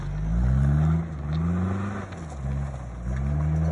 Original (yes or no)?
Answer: yes